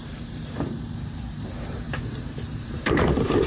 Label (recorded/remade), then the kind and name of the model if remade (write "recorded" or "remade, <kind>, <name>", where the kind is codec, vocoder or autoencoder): remade, vocoder, BigVGAN v2